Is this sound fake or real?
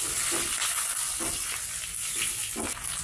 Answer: real